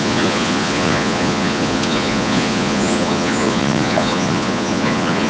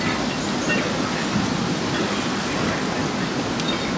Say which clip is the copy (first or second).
first